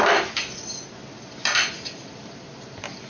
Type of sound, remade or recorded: recorded